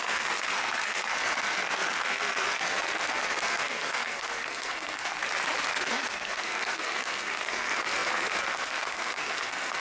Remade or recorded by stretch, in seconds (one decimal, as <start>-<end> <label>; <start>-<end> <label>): 0.0-5.2 remade; 5.2-5.7 recorded; 5.7-9.8 remade